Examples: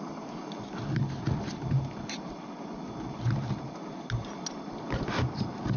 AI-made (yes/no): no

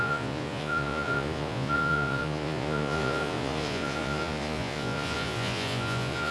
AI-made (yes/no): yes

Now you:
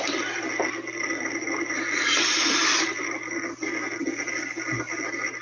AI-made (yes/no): no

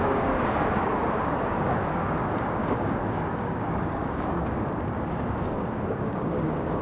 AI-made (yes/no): yes